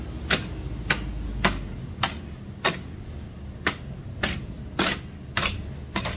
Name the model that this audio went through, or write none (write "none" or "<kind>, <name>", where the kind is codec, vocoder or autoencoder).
none